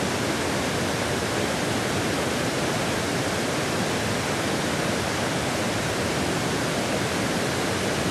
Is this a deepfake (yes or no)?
no